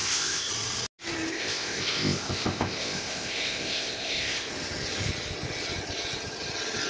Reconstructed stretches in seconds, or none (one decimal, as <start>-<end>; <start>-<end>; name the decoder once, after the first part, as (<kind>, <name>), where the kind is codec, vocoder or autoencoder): 0.0-0.5 (codec, ZipCodec); 1.3-4.5